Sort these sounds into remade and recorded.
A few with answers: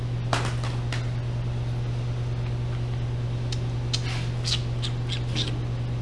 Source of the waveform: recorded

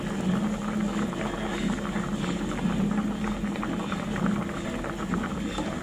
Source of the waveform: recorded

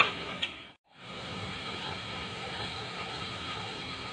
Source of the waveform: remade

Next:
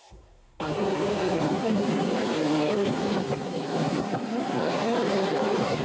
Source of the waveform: remade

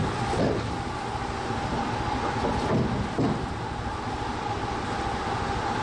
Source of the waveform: recorded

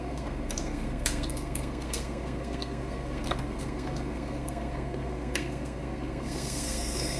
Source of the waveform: remade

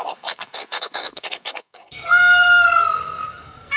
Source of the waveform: remade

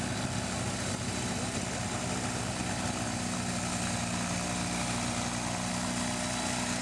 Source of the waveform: recorded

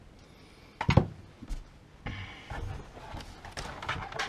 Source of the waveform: recorded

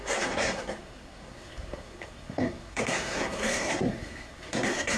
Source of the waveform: remade